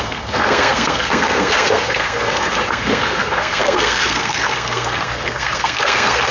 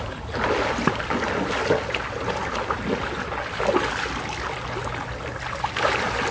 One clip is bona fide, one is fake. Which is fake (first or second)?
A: first